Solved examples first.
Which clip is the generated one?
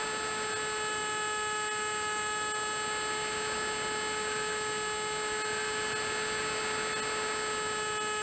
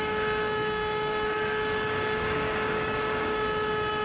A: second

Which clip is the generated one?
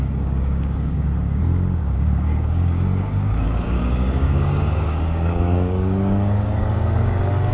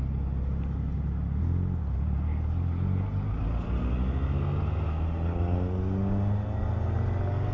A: first